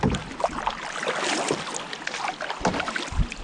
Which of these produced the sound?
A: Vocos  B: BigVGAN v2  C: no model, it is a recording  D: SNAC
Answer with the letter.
C